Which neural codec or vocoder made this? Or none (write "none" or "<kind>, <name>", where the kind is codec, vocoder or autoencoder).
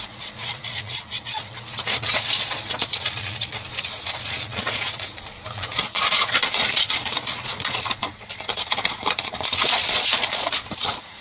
vocoder, Vocos